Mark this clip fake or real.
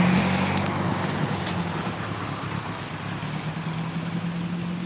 real